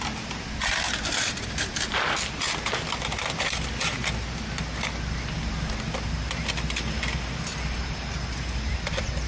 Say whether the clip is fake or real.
real